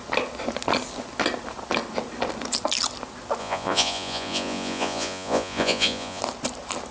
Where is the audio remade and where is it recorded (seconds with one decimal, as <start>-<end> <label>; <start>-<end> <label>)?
0.0-3.4 recorded; 3.4-6.2 remade; 6.2-6.9 recorded